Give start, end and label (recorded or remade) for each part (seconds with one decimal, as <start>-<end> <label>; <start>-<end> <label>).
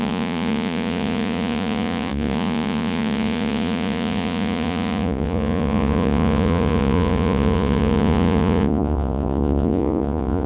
0.0-10.5 remade